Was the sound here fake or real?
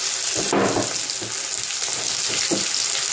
real